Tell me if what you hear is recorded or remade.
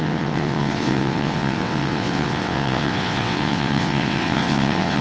remade